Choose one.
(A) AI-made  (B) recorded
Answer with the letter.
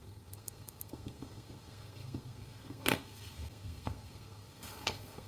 A